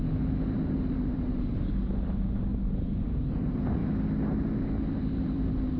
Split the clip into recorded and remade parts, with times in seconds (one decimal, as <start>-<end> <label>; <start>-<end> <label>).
0.0-3.8 remade; 3.8-5.0 recorded; 5.0-5.8 remade